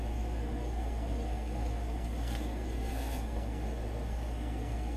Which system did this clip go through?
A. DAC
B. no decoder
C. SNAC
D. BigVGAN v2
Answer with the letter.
C